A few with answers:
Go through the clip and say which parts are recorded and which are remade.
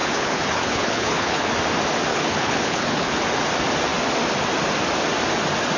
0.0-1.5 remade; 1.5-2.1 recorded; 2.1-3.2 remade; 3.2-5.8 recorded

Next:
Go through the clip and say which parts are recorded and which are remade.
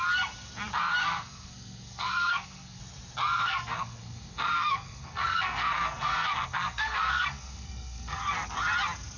0.0-1.0 recorded; 1.0-2.8 remade; 2.8-3.4 recorded; 3.4-8.2 remade; 8.2-9.2 recorded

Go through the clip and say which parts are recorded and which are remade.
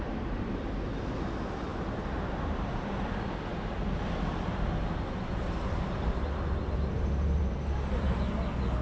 0.0-1.7 recorded; 1.7-3.1 remade; 3.1-3.5 recorded; 3.5-8.2 remade; 8.2-8.8 recorded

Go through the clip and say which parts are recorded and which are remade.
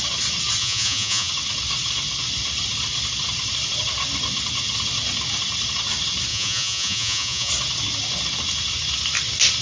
0.0-0.6 recorded; 0.6-1.3 remade; 1.3-6.3 recorded; 6.3-7.5 remade; 7.5-9.6 recorded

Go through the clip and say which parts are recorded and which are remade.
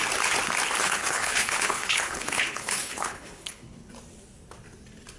0.0-0.8 recorded; 0.8-3.9 remade; 3.9-5.2 recorded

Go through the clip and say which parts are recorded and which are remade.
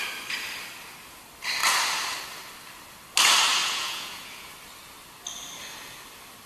0.0-3.6 recorded; 3.6-4.5 remade; 4.5-6.5 recorded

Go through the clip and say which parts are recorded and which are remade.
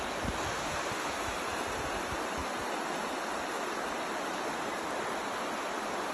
0.0-0.5 recorded; 0.5-1.1 remade; 1.1-6.1 recorded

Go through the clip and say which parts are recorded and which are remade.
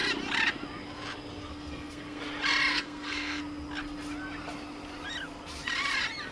0.0-1.5 recorded; 1.5-2.2 remade; 2.2-2.7 recorded; 2.7-3.4 remade; 3.4-6.3 recorded